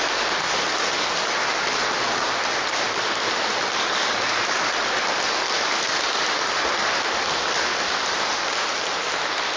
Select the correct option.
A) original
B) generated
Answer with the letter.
A